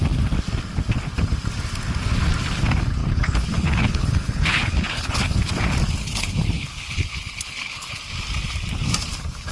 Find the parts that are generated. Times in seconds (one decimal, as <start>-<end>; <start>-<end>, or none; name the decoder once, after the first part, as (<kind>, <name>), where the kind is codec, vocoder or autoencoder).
3.0-5.4 (codec, HILCodec); 6.0-8.0

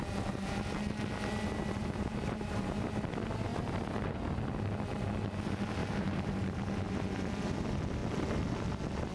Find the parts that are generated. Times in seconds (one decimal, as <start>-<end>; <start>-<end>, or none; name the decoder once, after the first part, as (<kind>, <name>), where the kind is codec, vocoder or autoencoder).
1.8-2.8 (vocoder, BigVGAN v2); 3.5-4.2; 5.8-6.6

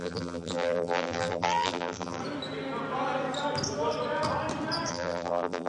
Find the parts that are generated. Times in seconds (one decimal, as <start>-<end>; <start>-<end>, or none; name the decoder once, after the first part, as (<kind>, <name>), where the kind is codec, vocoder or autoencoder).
0.0-2.2 (vocoder, BigVGAN v2); 4.9-5.7

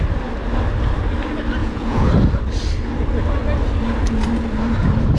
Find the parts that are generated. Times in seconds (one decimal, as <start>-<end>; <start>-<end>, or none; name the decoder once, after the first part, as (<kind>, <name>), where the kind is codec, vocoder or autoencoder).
1.6-2.1 (vocoder, Vocos)

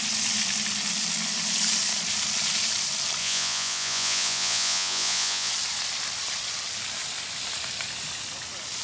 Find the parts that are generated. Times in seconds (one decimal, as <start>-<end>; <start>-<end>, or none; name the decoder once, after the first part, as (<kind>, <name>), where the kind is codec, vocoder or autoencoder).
3.2-5.5 (vocoder, Vocos)

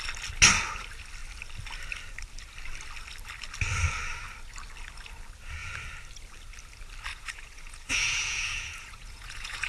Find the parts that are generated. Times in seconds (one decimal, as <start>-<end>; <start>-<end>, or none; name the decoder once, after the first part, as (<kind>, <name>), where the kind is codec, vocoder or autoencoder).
7.1-9.7 (vocoder, Vocos)